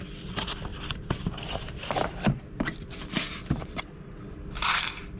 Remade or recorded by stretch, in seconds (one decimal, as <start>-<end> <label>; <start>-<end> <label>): 0.0-0.7 recorded; 0.7-3.8 remade; 3.8-5.2 recorded